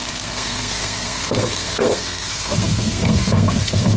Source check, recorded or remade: remade